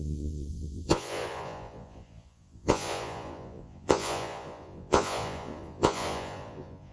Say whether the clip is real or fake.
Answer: fake